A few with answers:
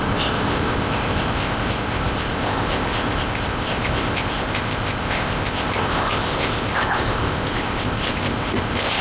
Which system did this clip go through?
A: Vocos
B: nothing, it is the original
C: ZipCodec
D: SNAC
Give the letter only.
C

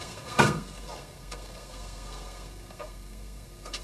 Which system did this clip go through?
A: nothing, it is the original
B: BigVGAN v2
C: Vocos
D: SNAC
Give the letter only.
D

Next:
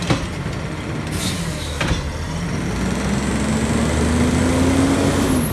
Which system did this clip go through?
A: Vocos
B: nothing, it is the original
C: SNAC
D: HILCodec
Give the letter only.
B